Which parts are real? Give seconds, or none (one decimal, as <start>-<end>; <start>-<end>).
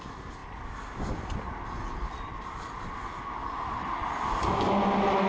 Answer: 0.0-5.3